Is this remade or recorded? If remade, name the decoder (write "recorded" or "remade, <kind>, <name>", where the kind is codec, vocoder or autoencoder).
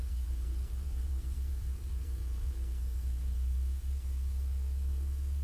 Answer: remade, codec, SNAC